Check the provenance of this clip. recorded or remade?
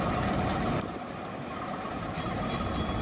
remade